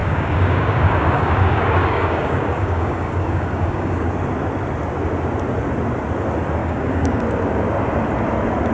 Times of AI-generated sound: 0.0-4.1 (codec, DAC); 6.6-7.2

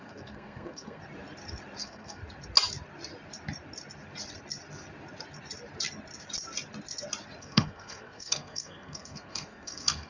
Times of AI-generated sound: 0.0-1.0 (codec, SNAC); 1.8-2.2; 7.4-10.1

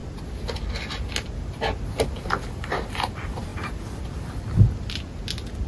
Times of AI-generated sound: 2.5-3.5 (vocoder, BigVGAN v2)

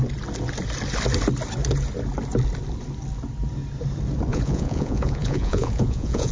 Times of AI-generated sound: 4.3-6.3 (vocoder, Vocos)

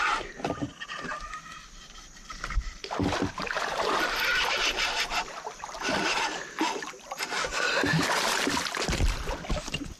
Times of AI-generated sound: 4.6-5.5 (vocoder, BigVGAN v2); 7.9-8.5

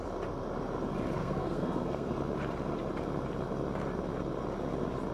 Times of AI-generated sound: 1.2-2.1 (codec, SNAC)

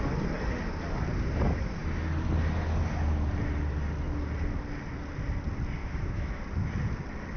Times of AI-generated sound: 5.8-6.4 (autoencoder, DAC-VAE)

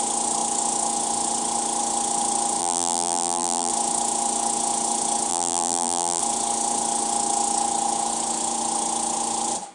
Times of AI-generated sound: 2.6-3.7 (vocoder, BigVGAN v2); 5.3-6.2